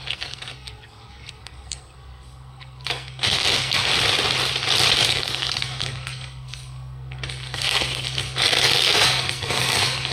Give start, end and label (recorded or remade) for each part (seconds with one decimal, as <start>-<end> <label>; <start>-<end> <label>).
0.0-3.9 remade; 3.9-5.1 recorded; 5.1-10.1 remade